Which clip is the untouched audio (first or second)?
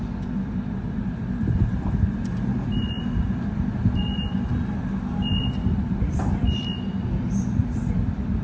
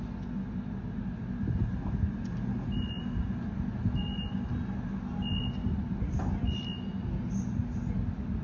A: second